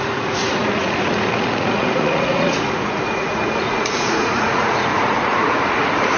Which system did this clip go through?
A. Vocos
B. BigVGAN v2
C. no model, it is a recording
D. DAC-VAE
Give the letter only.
A